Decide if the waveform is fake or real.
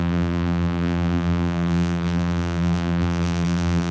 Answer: fake